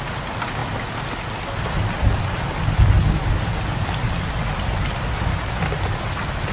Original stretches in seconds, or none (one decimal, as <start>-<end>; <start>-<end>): 0.0-6.5

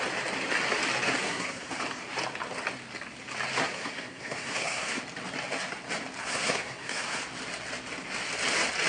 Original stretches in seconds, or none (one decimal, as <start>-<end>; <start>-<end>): 0.0-1.2; 1.7-3.6; 5.0-6.2; 7.2-8.9

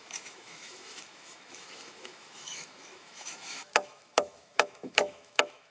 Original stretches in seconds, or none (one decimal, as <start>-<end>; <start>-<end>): none

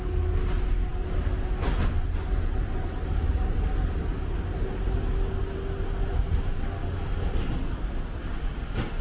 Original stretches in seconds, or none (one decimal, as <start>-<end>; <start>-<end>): 0.0-9.0

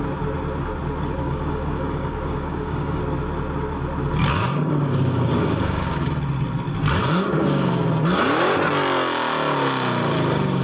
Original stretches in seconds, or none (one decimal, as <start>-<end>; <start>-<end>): 0.0-1.2; 3.0-4.2; 6.1-7.0; 7.7-10.6

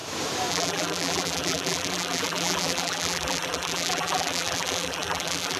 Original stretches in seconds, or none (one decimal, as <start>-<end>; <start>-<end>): 0.0-0.5